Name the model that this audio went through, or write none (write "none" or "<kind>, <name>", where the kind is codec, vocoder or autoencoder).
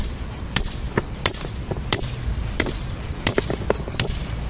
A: vocoder, BigVGAN v2